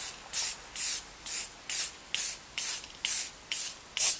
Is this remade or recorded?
recorded